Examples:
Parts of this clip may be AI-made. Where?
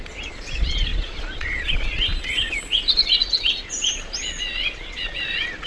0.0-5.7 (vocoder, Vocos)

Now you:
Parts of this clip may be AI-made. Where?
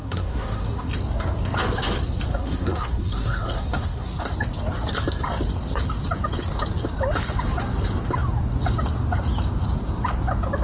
0.0-0.9 (codec, SNAC); 2.3-4.1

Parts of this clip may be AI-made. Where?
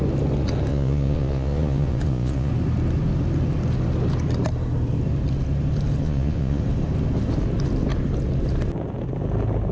0.7-2.5 (vocoder, Vocos); 6.0-6.6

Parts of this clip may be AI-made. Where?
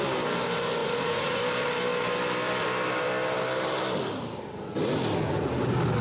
0.8-1.4 (vocoder, Vocos)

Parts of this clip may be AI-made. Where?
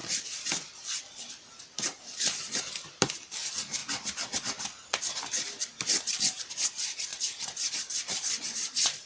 1.7-3.8 (vocoder, BigVGAN v2); 6.2-7.1; 8.4-9.1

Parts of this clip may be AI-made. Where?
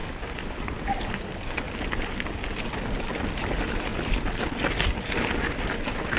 none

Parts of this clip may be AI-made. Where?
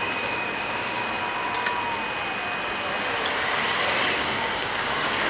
0.0-1.0 (codec, DAC); 4.2-5.3